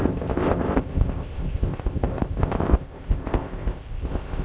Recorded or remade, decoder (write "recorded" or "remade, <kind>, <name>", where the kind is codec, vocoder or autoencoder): remade, codec, ZipCodec